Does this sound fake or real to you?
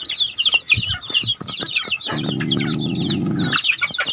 real